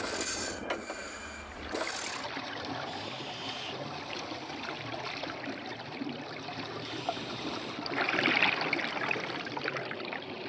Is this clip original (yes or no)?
yes